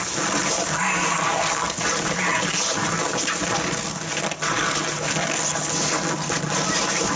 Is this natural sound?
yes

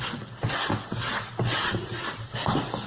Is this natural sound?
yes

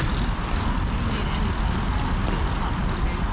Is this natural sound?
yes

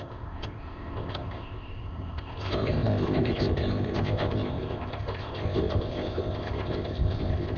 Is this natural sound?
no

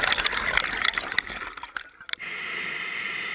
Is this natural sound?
yes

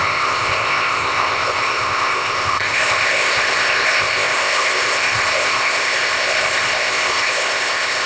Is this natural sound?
no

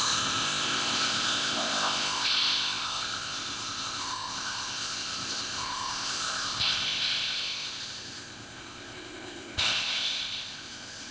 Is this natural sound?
no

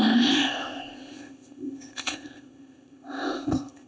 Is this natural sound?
no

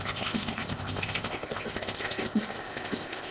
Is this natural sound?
no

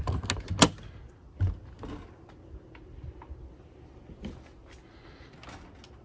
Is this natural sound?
yes